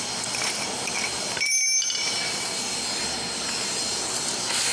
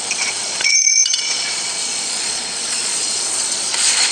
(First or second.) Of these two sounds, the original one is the first